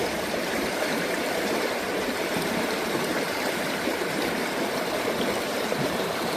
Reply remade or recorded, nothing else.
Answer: remade